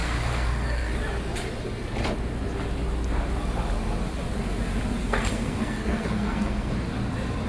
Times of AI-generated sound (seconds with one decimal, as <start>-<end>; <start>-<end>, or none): 0.0-0.9; 5.0-6.7